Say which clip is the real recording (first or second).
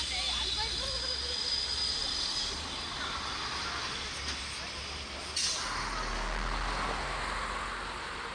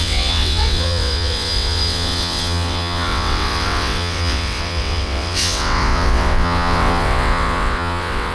first